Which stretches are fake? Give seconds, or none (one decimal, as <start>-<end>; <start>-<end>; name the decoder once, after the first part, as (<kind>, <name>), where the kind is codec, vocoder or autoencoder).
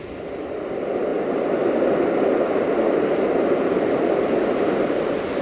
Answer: none